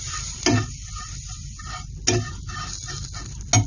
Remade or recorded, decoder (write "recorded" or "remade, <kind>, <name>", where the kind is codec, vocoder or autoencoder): recorded